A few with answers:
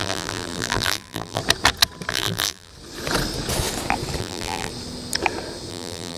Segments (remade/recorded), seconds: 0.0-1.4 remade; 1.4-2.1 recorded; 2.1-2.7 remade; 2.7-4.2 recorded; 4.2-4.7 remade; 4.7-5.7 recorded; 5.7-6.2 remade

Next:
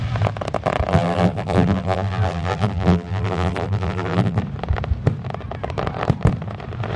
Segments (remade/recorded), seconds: 0.0-0.9 recorded; 0.9-4.4 remade; 4.4-7.0 recorded

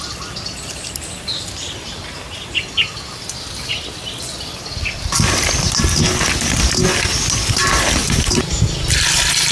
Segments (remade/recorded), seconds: 0.0-8.0 recorded; 8.0-8.6 remade; 8.6-9.5 recorded